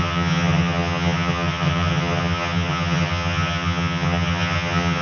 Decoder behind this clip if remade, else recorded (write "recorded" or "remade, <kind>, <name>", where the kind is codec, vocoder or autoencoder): remade, vocoder, HiFi-GAN